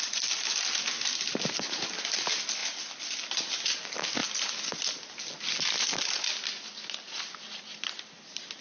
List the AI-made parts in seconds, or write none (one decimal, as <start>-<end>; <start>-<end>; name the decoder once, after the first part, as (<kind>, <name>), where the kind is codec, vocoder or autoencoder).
none

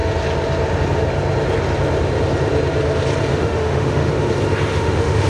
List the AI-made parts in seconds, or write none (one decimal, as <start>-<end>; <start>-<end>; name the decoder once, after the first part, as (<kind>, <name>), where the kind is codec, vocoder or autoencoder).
3.3-4.1 (autoencoder, DAC-VAE); 4.7-5.3

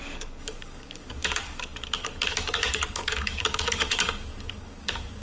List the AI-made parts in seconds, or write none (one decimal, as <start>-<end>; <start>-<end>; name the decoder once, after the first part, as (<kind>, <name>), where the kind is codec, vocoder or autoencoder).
0.0-5.2 (codec, DAC)

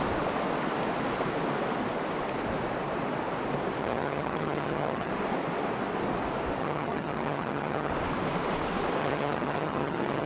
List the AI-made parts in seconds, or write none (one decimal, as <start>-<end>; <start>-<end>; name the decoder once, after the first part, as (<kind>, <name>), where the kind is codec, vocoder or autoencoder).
3.8-5.1 (vocoder, HiFi-GAN); 6.6-7.9; 9.0-10.3

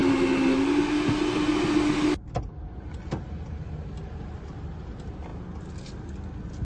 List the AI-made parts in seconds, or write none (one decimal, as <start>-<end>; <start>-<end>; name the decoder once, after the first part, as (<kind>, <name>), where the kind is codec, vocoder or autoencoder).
none

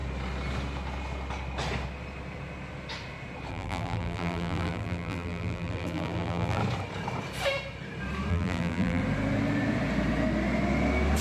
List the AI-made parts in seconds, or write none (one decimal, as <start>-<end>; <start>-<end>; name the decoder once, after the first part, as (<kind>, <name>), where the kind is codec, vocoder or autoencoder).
3.5-6.6 (vocoder, BigVGAN v2); 8.3-9.0

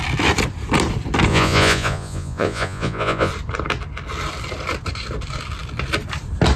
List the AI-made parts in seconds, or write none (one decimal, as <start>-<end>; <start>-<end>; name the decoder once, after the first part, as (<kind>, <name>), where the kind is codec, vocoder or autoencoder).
1.3-3.3 (vocoder, Vocos)

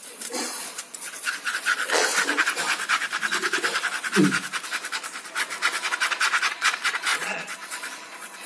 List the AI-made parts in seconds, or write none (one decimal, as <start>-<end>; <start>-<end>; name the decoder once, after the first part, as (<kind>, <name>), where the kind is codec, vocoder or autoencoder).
0.0-2.1 (vocoder, Vocos); 6.4-8.5